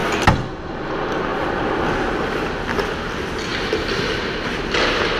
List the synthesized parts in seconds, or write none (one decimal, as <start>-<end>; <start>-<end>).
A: 1.3-1.8; 3.5-4.8